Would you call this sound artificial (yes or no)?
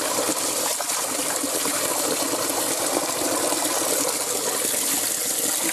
no